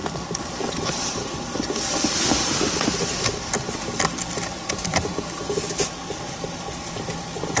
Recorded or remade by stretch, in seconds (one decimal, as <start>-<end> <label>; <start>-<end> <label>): 0.0-7.6 recorded